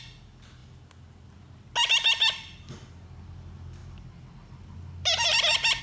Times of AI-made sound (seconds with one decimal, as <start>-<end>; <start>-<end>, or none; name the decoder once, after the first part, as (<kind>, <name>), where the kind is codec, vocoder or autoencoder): none